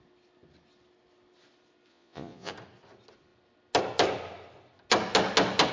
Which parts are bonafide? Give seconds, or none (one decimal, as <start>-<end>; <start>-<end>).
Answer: 0.0-1.9; 2.5-5.7